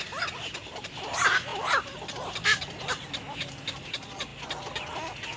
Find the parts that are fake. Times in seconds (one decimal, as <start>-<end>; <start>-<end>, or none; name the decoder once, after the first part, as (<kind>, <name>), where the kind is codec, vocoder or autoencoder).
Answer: none